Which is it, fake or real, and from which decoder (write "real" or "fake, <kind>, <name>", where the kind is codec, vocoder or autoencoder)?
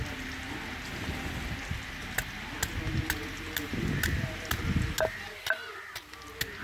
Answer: real